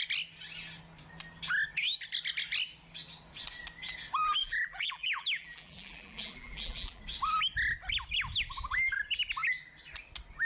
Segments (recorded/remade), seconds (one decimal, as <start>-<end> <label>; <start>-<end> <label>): 0.0-4.4 recorded; 4.4-7.0 remade; 7.0-10.4 recorded